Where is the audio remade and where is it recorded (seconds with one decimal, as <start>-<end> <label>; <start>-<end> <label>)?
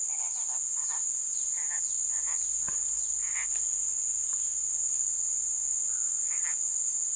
0.0-3.5 recorded; 3.5-4.1 remade; 4.1-7.2 recorded